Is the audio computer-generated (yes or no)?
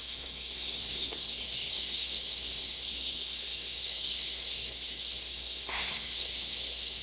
yes